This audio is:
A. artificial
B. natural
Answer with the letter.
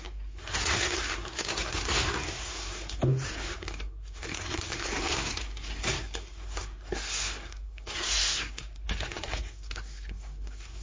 A